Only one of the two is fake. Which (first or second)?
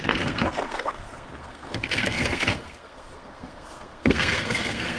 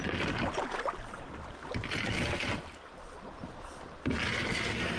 first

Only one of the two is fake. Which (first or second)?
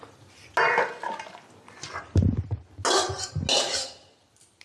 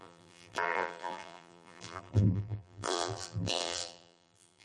second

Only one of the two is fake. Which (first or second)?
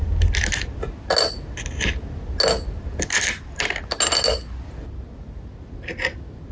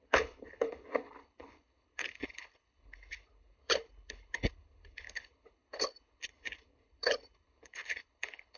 second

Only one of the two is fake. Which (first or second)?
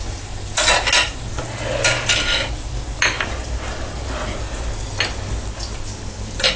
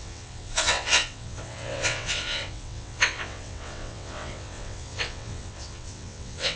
second